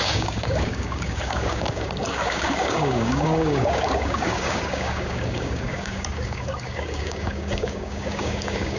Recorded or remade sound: remade